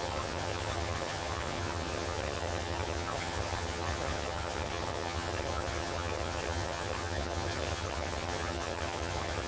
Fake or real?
fake